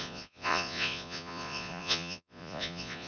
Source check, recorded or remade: remade